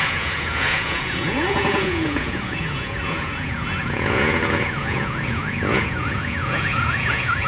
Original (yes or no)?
no